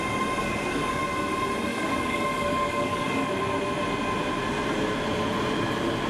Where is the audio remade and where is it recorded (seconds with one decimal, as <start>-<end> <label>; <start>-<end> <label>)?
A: 0.0-0.4 recorded; 0.4-1.0 remade; 1.0-1.7 recorded; 1.7-3.3 remade; 3.3-6.1 recorded